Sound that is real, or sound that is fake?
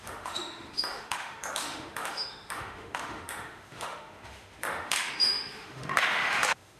fake